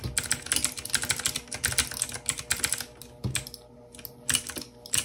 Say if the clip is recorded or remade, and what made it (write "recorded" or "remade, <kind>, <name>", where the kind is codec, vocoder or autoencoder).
recorded